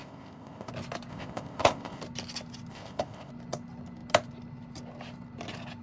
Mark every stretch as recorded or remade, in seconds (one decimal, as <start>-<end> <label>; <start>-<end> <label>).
0.0-0.7 remade; 0.7-1.1 recorded; 1.1-2.0 remade; 2.0-2.7 recorded; 2.7-3.3 remade; 3.3-5.8 recorded